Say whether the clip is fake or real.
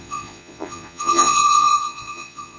fake